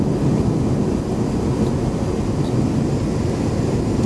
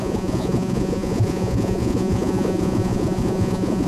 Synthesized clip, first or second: second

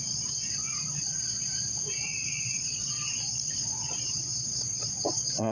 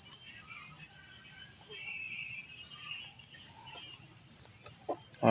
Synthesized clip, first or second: first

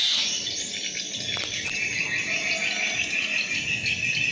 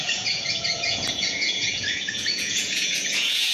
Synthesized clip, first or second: second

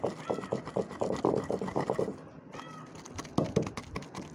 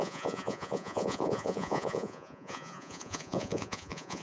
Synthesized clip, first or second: second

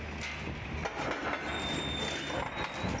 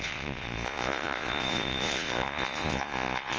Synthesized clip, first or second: second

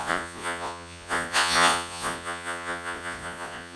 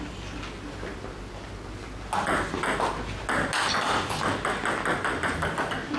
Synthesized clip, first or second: first